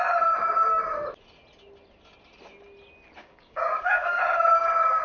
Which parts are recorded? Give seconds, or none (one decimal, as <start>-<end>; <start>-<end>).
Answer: 0.0-3.2; 4.2-5.0